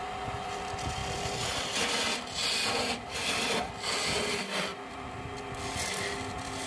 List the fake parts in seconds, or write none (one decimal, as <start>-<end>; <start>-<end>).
none

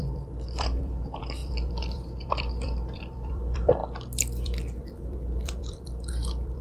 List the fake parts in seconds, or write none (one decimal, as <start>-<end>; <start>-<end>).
0.0-6.6

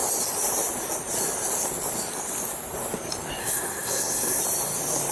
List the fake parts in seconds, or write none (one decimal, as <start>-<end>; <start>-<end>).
3.4-4.4

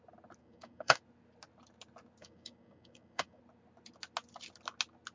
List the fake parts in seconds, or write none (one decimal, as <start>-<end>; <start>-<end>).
0.4-1.0; 2.2-3.4

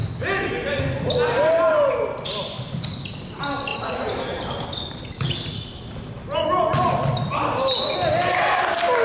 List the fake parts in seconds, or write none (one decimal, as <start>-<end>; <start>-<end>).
none

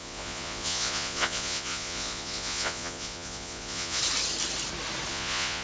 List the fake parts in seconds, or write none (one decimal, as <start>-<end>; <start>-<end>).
0.0-4.0; 5.1-5.6

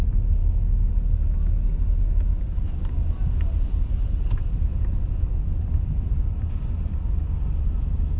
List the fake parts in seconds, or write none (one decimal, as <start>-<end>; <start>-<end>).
0.4-0.9